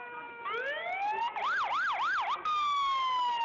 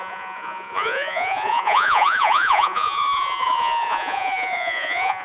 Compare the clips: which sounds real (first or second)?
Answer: first